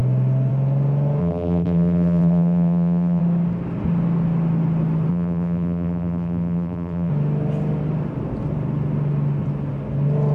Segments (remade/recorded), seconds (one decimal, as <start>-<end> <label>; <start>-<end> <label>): 0.0-1.2 recorded; 1.2-3.2 remade; 3.2-5.1 recorded; 5.1-7.1 remade; 7.1-10.3 recorded